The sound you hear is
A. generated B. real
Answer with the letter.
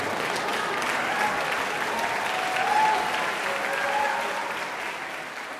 B